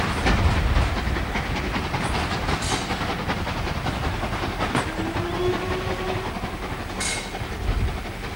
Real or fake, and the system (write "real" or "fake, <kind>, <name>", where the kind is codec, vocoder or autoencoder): real